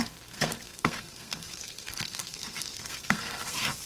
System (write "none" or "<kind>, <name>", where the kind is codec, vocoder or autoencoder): codec, SNAC